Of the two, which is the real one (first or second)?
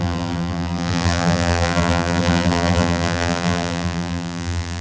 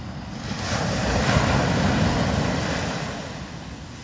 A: second